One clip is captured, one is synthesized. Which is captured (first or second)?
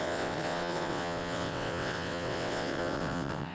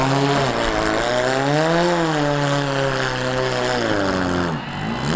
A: second